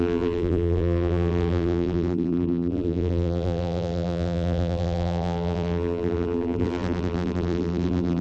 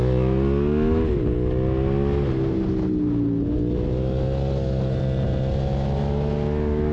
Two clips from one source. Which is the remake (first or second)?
first